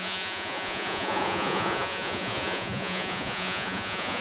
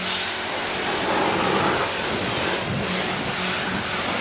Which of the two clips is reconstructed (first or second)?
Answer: first